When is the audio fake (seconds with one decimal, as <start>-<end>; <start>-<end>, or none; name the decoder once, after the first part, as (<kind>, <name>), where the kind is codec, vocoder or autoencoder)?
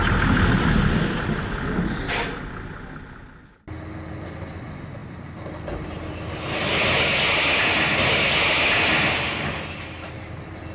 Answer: none